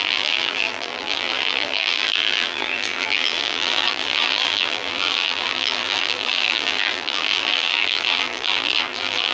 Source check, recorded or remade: remade